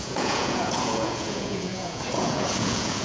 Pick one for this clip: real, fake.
fake